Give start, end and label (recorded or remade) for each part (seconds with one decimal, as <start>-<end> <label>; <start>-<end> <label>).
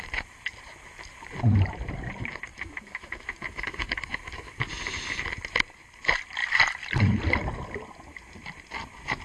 0.0-2.5 recorded; 2.5-4.7 remade; 4.7-9.2 recorded